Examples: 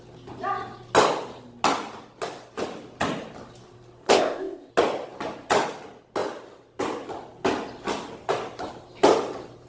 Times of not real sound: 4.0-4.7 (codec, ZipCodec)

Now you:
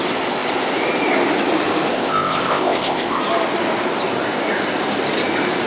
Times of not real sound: 1.9-3.2 (codec, ZipCodec)

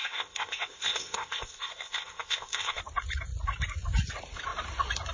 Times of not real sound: 0.0-2.8 (codec, ZipCodec)